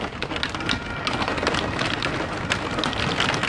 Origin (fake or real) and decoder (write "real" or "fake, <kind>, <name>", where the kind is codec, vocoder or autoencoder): real